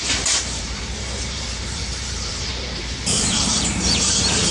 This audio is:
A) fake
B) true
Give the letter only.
A